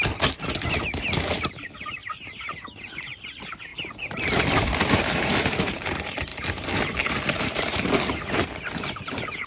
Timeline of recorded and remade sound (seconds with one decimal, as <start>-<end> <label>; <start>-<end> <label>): 0.0-9.5 remade